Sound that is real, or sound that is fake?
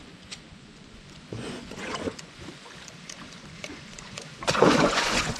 fake